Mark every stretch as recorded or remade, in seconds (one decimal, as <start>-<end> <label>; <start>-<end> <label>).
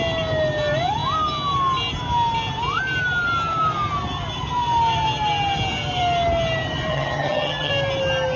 0.0-6.9 recorded; 6.9-7.7 remade; 7.7-8.4 recorded